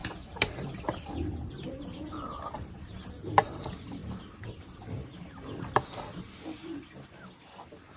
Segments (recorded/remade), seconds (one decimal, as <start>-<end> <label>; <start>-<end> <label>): 0.0-1.7 recorded; 1.7-8.0 remade